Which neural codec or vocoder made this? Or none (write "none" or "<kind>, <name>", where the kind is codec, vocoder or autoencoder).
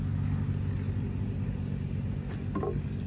none